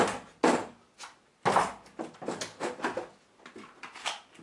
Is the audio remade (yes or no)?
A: no